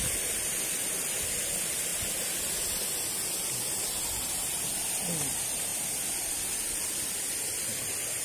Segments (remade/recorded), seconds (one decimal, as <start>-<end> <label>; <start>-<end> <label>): 0.0-8.2 recorded

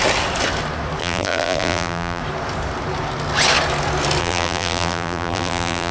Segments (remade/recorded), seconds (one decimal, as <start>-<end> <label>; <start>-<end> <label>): 0.0-1.0 recorded; 1.0-2.2 remade; 2.2-4.2 recorded; 4.2-5.9 remade

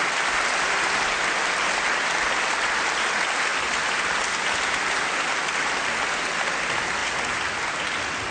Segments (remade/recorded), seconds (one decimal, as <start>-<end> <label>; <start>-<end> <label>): 0.0-8.3 recorded

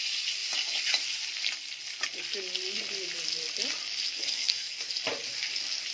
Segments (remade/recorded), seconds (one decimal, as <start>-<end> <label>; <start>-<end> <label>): 0.0-4.1 recorded; 4.1-4.8 remade; 4.8-5.9 recorded

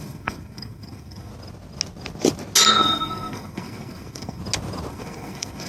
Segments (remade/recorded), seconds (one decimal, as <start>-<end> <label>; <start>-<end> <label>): 0.0-1.3 remade; 1.3-2.7 recorded; 2.7-4.4 remade; 4.4-4.9 recorded; 4.9-5.7 remade

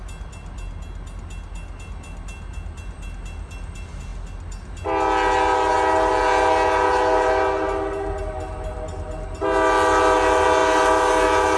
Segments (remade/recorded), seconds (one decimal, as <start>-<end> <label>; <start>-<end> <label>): 0.0-11.6 recorded

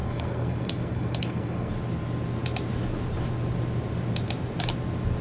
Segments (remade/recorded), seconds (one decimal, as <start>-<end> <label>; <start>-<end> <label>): 0.0-1.7 remade; 1.7-5.2 recorded